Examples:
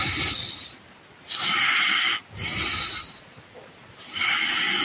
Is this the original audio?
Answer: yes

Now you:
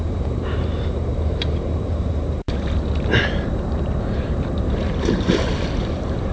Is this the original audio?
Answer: no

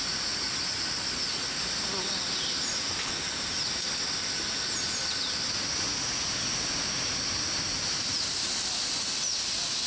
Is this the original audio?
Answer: yes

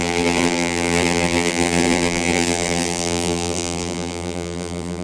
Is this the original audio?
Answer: no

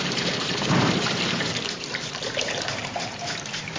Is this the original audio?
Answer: no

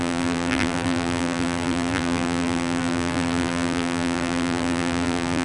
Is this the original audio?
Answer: no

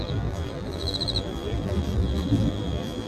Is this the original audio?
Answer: no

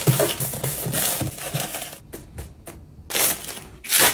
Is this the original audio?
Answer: yes